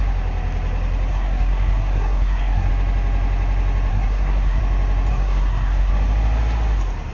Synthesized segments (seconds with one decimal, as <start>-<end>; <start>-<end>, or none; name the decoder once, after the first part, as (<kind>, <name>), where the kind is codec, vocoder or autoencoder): 1.1-2.7 (codec, SNAC); 3.9-4.6; 5.1-5.9